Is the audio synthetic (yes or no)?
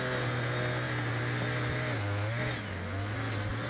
no